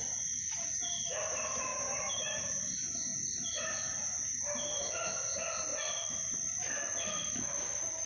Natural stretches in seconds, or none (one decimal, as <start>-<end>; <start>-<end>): 0.0-1.7; 2.5-8.1